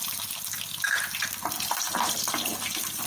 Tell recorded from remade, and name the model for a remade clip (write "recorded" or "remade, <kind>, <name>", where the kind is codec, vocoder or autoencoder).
remade, vocoder, BigVGAN v2